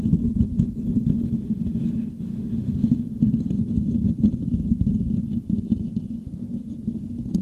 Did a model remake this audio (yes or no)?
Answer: no